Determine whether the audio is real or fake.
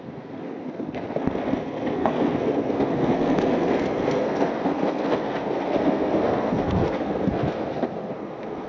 fake